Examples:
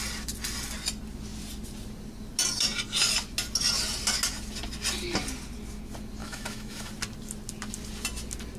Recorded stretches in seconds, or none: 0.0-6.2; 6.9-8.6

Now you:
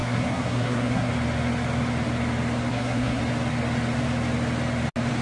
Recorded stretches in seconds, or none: 1.1-2.7; 3.2-5.2

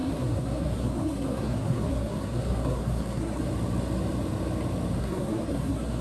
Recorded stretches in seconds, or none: 3.4-5.0

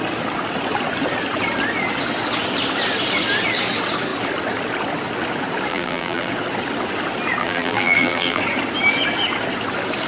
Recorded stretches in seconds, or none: 0.0-5.7; 6.3-7.4; 8.4-10.1

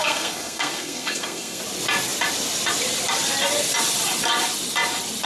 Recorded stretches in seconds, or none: 1.6-5.3

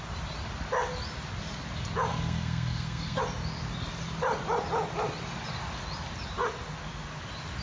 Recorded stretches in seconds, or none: 0.0-2.1; 3.2-7.6